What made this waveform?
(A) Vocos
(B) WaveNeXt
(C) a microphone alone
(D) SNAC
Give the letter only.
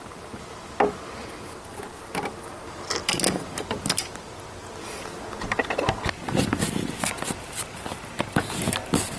C